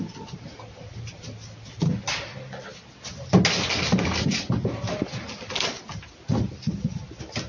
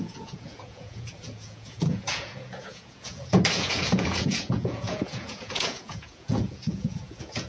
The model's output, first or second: second